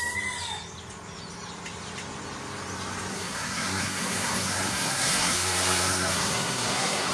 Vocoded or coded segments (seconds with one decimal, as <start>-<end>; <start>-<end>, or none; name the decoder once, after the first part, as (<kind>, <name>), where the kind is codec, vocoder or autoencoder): 3.1-7.1 (codec, SNAC)